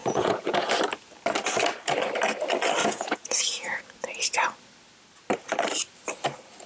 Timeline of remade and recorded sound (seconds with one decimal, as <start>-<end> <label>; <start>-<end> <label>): 0.0-0.7 remade; 0.7-2.8 recorded; 2.8-3.8 remade; 3.8-6.7 recorded